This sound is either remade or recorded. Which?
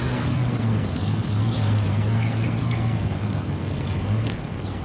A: remade